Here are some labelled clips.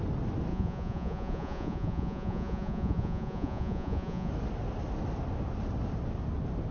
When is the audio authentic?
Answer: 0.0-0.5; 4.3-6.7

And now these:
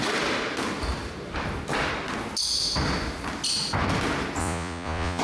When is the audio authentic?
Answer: 0.0-4.4

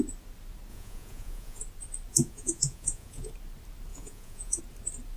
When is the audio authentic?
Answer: 0.0-0.7; 1.6-2.1; 3.3-3.9; 4.6-5.2